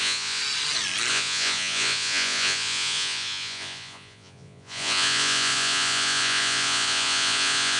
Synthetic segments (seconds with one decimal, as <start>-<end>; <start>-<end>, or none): 0.0-0.4; 1.1-7.8